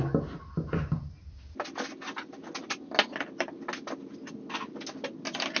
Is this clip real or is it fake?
real